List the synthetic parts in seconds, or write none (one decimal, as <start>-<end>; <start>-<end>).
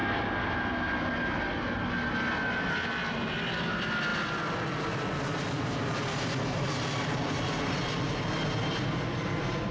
none